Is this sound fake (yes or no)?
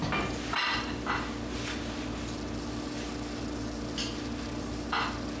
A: no